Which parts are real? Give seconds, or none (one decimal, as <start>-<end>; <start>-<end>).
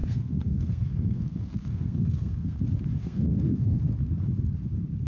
2.6-3.0; 3.8-5.1